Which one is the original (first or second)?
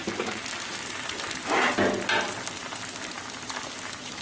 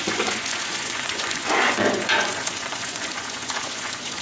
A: first